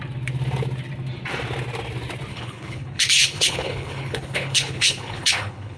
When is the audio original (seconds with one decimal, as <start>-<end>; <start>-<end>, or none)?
0.0-2.3